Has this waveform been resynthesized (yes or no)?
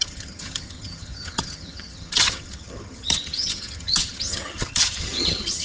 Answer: yes